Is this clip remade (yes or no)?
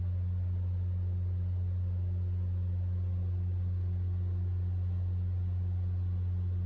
no